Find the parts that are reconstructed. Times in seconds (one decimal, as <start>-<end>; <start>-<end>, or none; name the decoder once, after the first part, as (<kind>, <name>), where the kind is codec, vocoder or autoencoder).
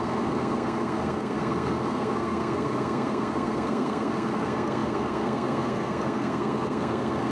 0.0-7.3 (codec, SNAC)